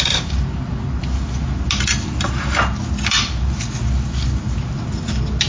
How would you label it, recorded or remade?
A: recorded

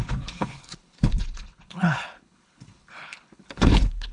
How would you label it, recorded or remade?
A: remade